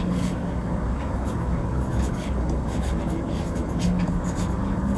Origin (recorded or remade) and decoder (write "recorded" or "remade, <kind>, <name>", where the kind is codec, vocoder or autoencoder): remade, codec, DAC